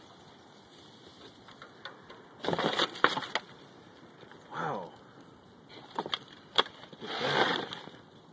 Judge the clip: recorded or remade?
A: recorded